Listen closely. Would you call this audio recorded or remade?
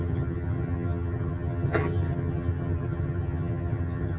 remade